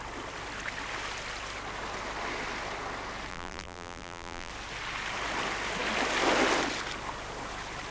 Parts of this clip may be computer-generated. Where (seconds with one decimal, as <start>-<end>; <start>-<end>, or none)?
3.3-4.5